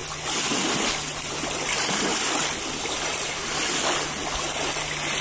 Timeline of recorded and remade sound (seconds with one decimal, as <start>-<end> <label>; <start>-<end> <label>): 0.0-1.3 recorded; 1.3-2.1 remade; 2.1-5.2 recorded